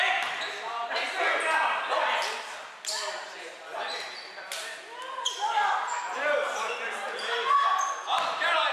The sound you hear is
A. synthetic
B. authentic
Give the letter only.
B